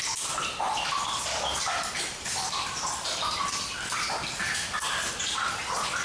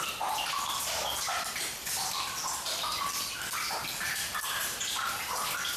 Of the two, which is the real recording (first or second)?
first